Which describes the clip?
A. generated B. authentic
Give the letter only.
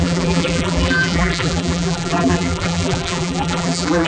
A